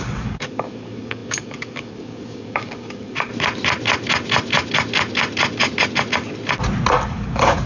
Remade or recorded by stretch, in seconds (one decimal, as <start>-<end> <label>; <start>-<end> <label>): 0.0-3.3 remade; 3.3-6.9 recorded; 6.9-7.7 remade

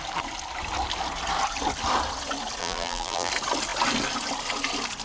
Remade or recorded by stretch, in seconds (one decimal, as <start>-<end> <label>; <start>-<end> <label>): 0.0-2.6 recorded; 2.6-3.3 remade; 3.3-5.0 recorded

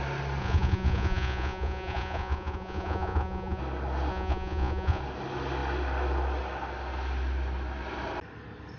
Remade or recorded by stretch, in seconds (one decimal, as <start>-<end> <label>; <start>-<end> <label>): 0.0-0.4 recorded; 0.4-3.6 remade; 3.6-4.1 recorded; 4.1-5.0 remade; 5.0-8.8 recorded

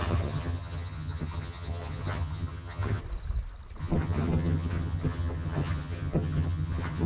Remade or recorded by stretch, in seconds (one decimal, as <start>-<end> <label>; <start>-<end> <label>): 0.0-3.0 remade; 3.0-3.8 recorded; 3.8-7.1 remade

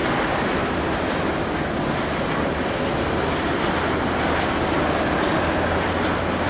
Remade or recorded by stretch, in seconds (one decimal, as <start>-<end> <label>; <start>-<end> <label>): 0.0-6.5 recorded

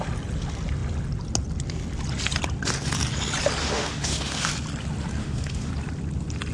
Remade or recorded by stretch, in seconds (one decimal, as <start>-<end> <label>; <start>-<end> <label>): 0.0-3.6 recorded; 3.6-4.5 remade; 4.5-5.2 recorded; 5.2-5.7 remade; 5.7-6.5 recorded

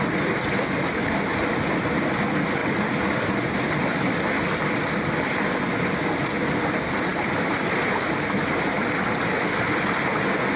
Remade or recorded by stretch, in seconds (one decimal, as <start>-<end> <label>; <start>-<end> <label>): 0.0-1.3 recorded; 1.3-2.2 remade; 2.2-2.6 recorded; 2.6-4.2 remade; 4.2-7.1 recorded; 7.1-7.7 remade; 7.7-10.6 recorded

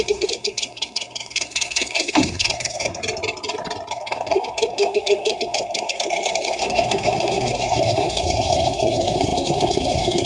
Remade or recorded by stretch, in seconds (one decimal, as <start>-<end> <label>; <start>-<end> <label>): 0.0-3.0 remade; 3.0-3.9 recorded; 3.9-10.3 remade